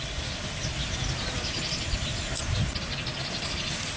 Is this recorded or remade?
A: recorded